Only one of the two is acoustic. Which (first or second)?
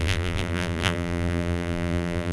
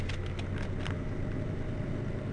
second